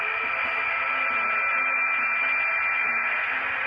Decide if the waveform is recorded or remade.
recorded